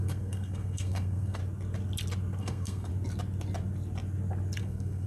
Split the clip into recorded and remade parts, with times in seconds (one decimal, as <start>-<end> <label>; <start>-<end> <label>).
0.0-1.4 remade; 1.4-2.4 recorded; 2.4-2.9 remade; 2.9-4.6 recorded; 4.6-5.1 remade